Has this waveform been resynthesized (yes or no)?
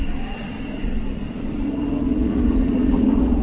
yes